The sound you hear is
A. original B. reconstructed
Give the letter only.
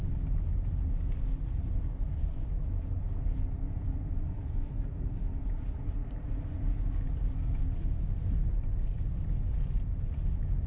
A